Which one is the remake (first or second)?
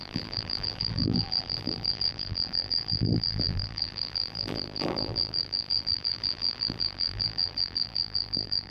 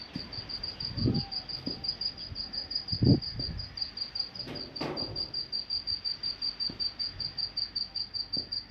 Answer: first